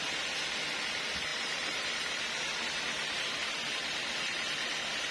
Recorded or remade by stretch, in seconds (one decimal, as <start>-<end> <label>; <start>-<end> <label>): 0.0-1.3 recorded; 1.3-2.2 remade; 2.2-5.1 recorded